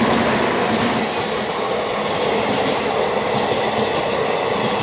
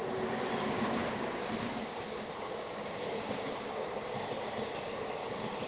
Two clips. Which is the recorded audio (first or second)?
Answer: first